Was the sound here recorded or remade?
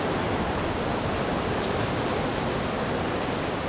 recorded